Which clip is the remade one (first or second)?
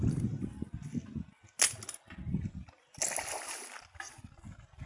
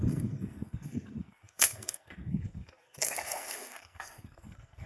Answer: second